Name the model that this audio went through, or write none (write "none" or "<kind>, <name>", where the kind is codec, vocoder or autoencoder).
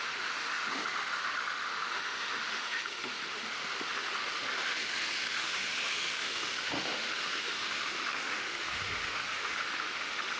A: autoencoder, DAC-VAE